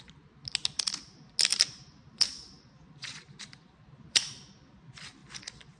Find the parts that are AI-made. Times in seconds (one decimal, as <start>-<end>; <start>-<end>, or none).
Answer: 1.5-4.3; 5.2-5.8